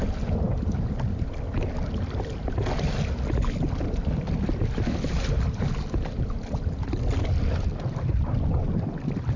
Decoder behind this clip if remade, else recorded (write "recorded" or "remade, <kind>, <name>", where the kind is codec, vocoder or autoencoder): recorded